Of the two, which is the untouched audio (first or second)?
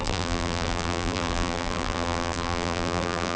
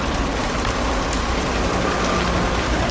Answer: second